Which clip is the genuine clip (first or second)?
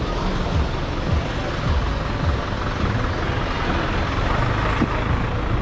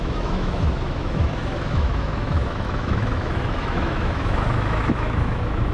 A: first